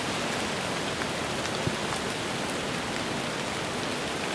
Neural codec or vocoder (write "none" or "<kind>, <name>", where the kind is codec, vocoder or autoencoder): none